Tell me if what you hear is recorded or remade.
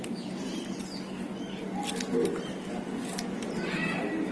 recorded